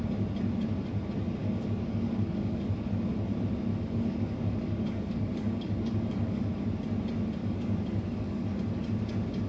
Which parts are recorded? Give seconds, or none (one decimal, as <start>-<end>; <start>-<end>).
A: 0.0-1.4; 2.7-3.7; 6.5-7.4; 8.5-9.5